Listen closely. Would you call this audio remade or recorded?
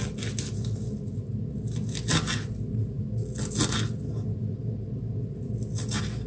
recorded